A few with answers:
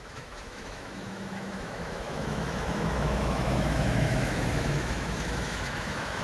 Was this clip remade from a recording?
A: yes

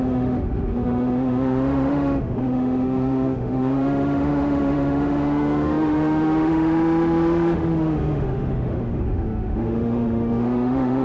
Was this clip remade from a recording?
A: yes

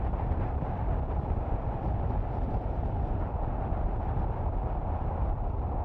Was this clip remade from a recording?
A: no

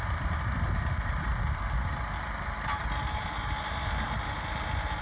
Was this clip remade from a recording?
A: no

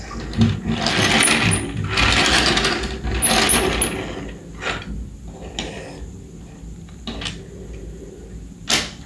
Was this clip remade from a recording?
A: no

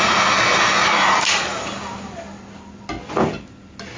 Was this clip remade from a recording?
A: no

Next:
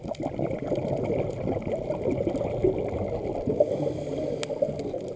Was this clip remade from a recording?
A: no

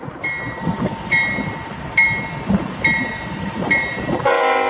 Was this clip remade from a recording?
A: no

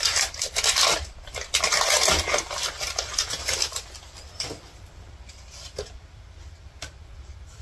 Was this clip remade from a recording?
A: yes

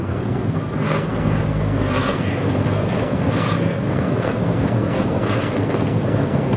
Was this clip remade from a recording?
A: yes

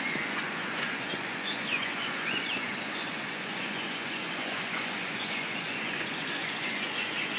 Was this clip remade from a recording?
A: yes